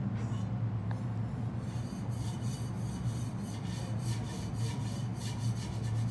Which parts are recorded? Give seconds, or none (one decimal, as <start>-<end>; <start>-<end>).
0.0-6.1